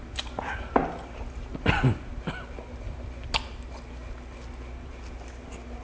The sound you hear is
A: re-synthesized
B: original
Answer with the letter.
B